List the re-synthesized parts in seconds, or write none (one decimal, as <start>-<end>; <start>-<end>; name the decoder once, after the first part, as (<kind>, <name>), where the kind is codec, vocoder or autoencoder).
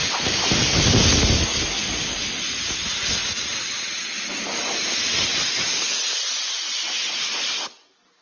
none